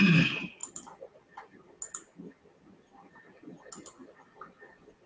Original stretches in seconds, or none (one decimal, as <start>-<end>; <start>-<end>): 0.0-5.1